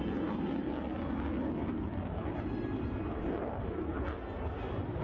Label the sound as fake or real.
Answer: real